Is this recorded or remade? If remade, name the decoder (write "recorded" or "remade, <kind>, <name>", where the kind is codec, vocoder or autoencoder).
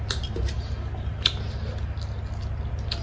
recorded